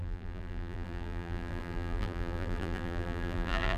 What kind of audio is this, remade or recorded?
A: remade